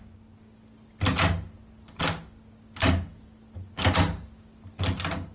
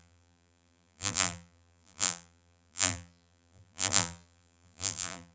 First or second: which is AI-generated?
second